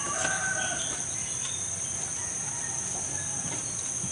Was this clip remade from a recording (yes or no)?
no